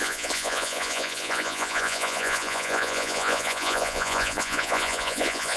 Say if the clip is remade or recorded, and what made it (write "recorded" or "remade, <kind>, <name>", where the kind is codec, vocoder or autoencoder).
remade, vocoder, Vocos